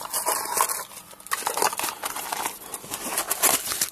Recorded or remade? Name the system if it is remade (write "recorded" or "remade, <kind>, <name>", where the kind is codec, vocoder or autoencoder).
recorded